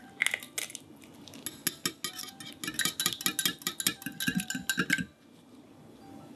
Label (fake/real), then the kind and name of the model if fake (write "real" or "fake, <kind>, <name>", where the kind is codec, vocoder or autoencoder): real